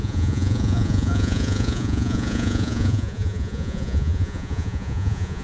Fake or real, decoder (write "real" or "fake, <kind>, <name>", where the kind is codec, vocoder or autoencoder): fake, vocoder, Vocos